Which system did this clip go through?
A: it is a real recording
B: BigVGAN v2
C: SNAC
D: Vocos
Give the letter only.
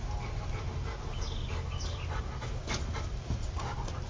A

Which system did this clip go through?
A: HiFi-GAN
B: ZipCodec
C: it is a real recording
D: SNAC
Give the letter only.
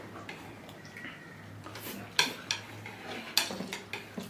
C